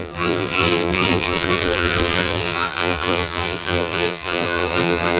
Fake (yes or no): yes